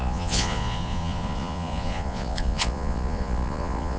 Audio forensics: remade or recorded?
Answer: remade